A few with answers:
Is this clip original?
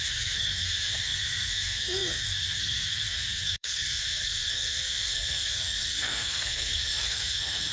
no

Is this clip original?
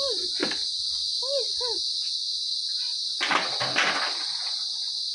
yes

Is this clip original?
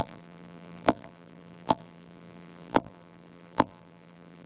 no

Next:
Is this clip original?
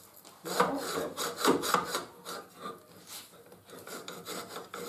yes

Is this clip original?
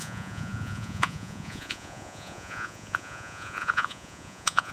no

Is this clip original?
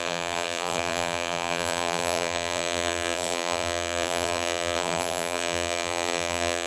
no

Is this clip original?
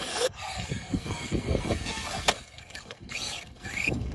no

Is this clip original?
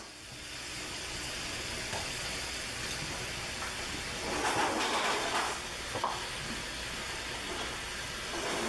yes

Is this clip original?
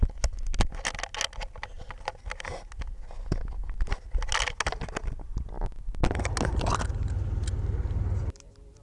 yes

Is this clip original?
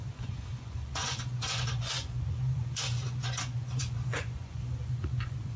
no